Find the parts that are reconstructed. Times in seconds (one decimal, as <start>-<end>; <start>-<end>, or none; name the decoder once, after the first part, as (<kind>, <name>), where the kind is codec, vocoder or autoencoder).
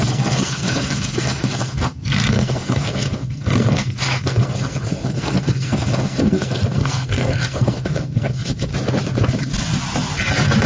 0.0-8.7 (codec, SNAC)